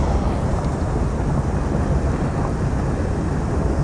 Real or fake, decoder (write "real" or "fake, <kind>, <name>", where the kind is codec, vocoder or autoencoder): real